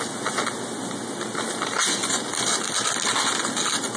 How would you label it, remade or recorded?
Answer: recorded